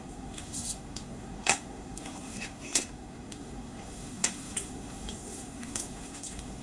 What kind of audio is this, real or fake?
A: fake